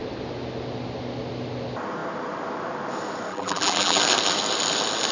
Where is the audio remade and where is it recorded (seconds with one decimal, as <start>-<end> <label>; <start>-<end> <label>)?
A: 0.0-3.3 recorded; 3.3-4.0 remade; 4.0-5.1 recorded